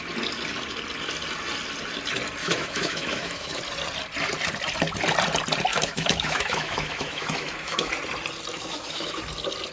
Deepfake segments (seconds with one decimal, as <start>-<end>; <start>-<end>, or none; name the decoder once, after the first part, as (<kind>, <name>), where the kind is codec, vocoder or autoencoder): 2.4-3.6 (autoencoder, DAC-VAE); 5.7-7.9; 8.5-9.2